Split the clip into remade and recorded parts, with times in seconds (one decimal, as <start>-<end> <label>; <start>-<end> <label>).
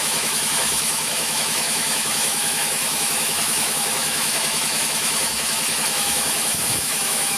0.0-7.4 remade